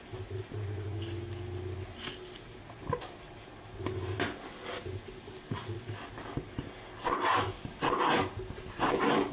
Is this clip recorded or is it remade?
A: recorded